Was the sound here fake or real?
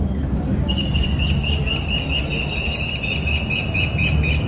real